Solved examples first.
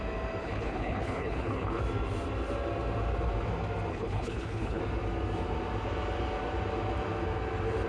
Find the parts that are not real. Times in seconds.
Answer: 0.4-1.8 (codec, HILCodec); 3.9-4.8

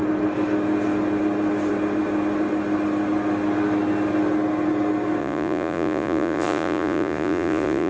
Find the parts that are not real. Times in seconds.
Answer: 5.2-7.9 (vocoder, Vocos)